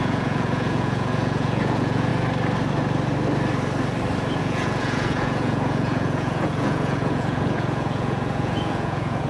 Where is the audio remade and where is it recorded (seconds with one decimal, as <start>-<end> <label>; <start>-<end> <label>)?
0.0-2.1 remade; 2.1-4.4 recorded; 4.4-9.3 remade